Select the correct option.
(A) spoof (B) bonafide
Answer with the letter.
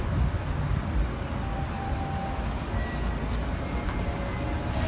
B